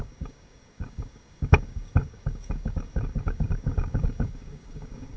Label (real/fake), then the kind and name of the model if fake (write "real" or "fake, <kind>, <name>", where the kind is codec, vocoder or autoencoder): fake, codec, DAC